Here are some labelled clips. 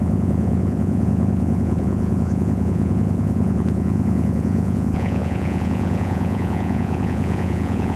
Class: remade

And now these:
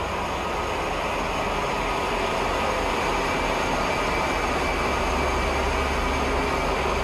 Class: recorded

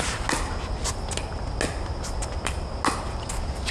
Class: recorded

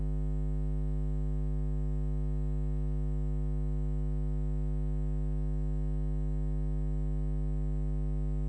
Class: recorded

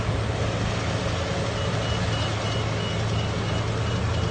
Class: recorded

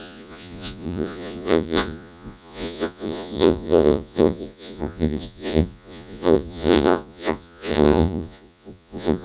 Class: remade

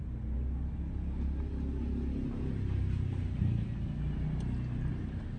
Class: recorded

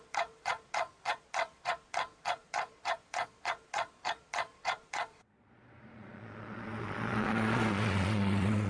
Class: remade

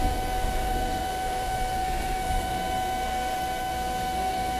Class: remade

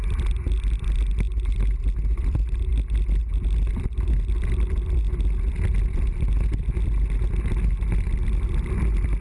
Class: recorded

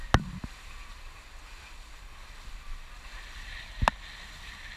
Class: recorded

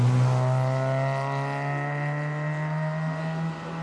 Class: recorded